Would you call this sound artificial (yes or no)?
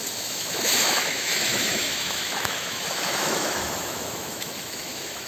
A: yes